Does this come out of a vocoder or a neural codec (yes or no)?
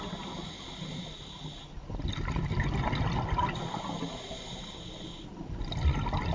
no